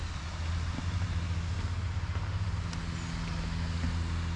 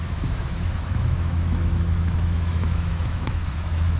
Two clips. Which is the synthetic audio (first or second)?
second